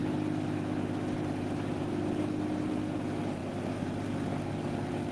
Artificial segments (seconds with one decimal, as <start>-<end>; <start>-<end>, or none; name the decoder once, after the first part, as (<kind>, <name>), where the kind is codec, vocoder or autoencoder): none